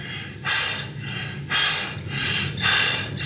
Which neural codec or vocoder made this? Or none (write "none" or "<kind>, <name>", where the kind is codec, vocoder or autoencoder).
none